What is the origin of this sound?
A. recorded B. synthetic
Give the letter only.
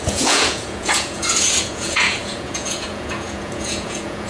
B